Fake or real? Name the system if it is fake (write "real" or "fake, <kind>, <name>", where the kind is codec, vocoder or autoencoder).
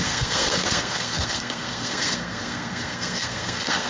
fake, codec, SNAC